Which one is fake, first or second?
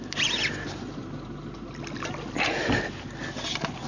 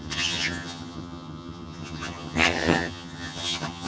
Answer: second